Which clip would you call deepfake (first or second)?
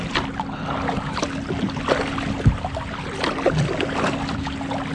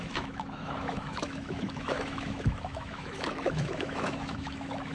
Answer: second